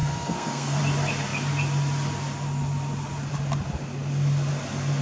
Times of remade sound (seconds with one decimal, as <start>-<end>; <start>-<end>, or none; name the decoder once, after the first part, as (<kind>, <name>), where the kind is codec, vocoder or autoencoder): 0.0-0.8 (codec, SNAC)